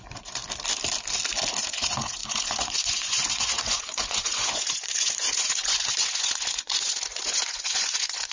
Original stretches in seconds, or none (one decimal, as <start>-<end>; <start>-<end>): 0.4-1.6